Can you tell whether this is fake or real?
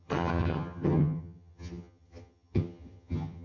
fake